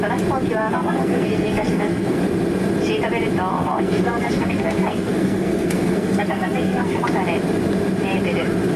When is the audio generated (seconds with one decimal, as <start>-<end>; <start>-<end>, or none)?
0.6-2.2; 3.5-7.1